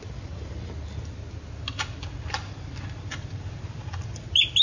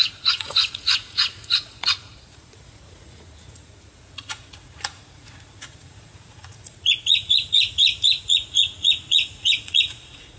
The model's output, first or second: second